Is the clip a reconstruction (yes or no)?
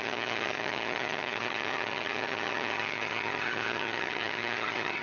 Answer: yes